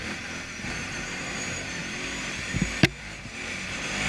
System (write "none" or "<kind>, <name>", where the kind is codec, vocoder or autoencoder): vocoder, BigVGAN v2